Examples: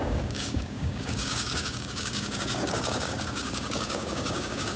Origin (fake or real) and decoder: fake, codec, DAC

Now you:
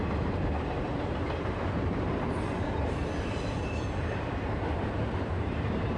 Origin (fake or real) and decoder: fake, vocoder, BigVGAN v2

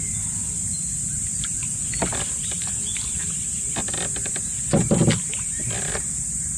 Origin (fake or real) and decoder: real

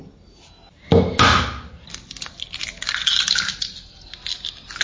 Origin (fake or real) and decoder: real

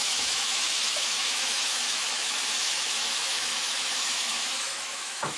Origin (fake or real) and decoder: fake, autoencoder, DAC-VAE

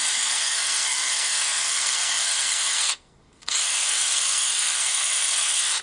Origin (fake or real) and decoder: fake, codec, SNAC